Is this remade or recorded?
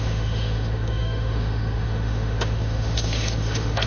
remade